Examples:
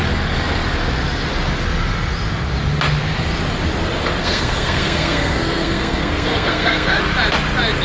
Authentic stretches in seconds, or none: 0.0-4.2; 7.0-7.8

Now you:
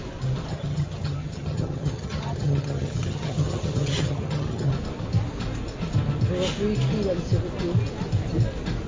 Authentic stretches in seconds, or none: 0.0-0.5; 4.7-8.9

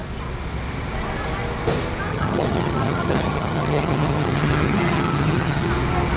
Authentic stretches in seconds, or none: 0.0-2.1; 5.7-6.2

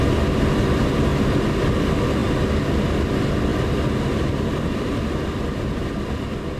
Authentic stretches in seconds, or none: 0.0-3.5

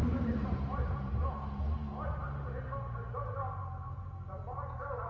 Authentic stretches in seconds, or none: 1.2-5.1

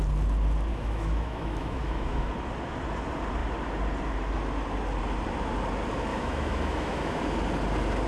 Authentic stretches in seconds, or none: 0.0-0.7; 2.3-6.1; 7.2-8.1

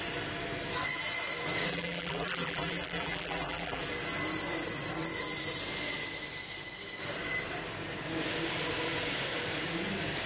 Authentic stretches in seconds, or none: 0.0-1.7; 3.8-10.3

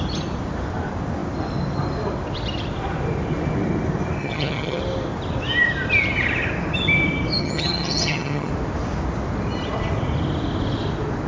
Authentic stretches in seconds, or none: 0.0-4.2; 4.8-7.4; 8.5-11.3